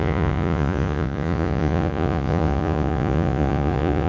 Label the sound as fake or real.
fake